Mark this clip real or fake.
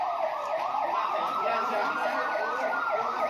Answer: fake